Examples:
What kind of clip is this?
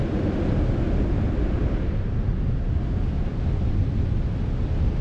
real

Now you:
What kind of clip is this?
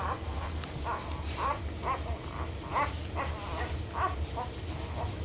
real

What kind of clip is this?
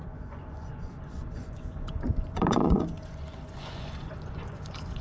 fake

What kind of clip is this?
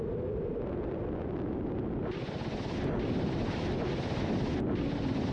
real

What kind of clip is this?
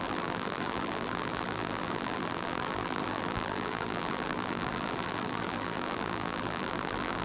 fake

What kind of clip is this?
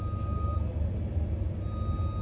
real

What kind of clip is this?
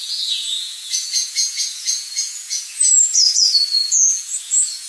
fake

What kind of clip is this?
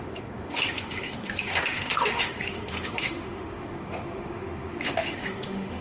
fake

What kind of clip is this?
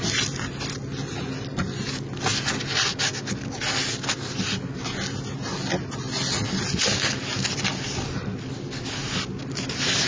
real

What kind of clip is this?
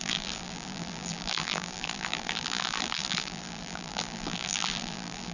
fake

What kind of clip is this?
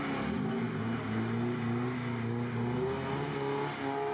real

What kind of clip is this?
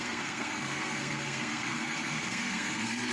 fake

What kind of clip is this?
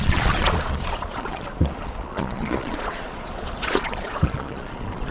fake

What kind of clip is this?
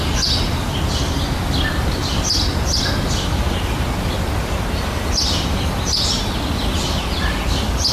real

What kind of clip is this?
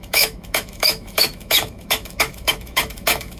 fake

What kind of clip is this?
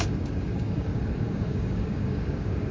fake